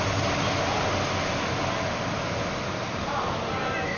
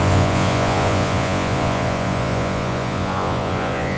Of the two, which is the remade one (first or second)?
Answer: second